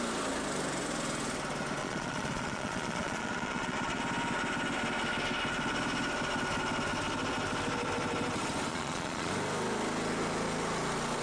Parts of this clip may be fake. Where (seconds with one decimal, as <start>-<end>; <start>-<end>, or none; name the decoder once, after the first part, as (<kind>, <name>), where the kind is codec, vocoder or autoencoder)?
1.8-4.0 (vocoder, Vocos); 8.7-9.3